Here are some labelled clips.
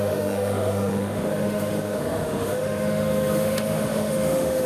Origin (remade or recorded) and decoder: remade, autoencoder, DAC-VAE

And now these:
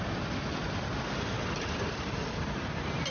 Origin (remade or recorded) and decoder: recorded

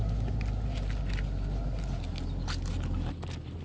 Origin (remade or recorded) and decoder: recorded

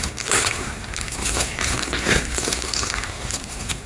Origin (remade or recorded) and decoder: remade, codec, SNAC